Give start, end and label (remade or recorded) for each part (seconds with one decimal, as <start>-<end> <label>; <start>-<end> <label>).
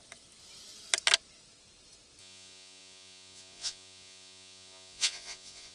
0.0-2.2 recorded; 2.2-5.7 remade